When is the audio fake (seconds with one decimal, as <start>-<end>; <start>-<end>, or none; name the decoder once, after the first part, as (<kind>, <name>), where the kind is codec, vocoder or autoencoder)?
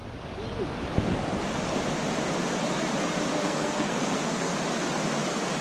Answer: 3.4-4.5 (codec, SNAC)